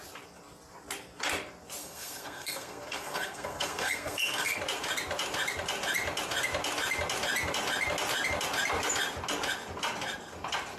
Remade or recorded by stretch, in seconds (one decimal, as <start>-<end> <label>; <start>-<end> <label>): 0.0-1.8 recorded; 1.8-4.6 remade; 4.6-10.8 recorded